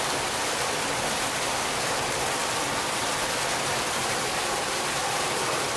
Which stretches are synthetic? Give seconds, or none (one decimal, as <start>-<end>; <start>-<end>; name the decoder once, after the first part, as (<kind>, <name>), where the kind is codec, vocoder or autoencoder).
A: none